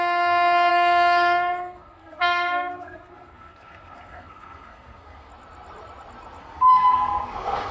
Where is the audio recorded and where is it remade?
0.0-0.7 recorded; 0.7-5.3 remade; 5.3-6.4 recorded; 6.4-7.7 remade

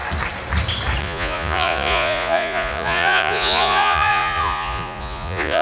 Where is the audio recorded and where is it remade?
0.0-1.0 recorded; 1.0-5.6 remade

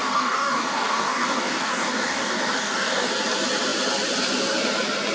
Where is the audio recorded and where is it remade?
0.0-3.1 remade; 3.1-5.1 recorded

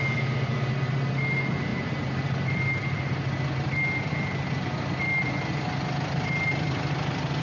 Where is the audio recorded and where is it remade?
0.0-7.4 recorded

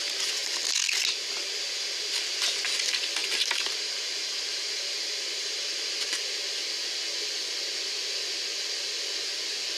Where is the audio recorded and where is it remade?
0.0-3.2 recorded; 3.2-6.3 remade; 6.3-9.8 recorded

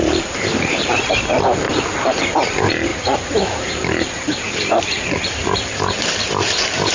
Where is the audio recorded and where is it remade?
0.0-6.9 remade

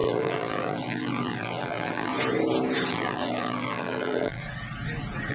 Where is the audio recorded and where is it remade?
0.0-2.1 remade; 2.1-2.9 recorded; 2.9-4.4 remade; 4.4-5.3 recorded

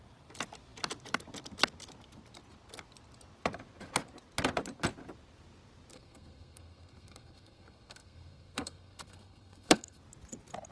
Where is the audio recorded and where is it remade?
0.0-5.9 recorded; 5.9-10.0 remade; 10.0-10.7 recorded